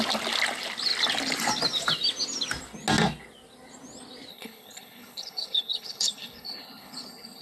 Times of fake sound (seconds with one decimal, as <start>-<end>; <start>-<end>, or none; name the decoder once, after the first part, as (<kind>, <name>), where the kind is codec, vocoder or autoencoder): 4.3-7.4 (codec, HILCodec)